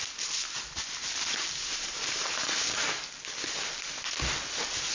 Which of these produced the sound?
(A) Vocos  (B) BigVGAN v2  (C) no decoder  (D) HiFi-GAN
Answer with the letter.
C